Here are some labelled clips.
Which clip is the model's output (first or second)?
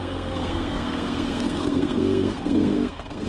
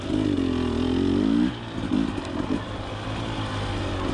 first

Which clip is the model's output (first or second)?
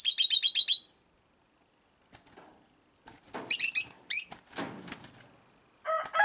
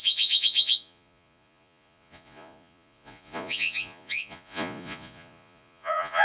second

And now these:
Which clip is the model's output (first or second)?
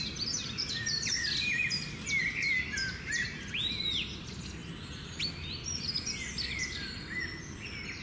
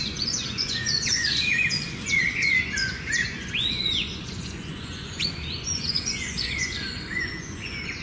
second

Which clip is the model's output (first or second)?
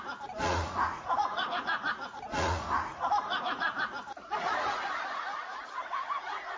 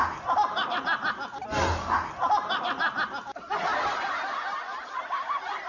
first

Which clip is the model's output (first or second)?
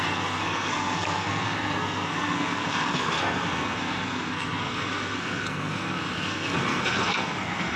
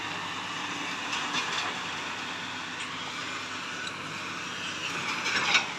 first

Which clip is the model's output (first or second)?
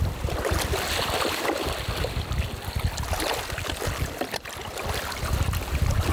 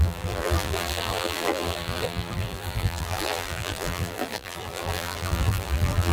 second